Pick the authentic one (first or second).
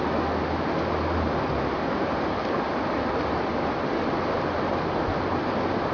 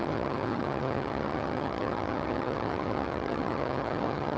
first